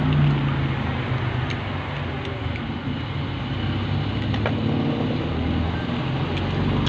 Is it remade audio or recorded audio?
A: recorded